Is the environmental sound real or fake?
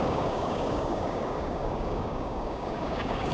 fake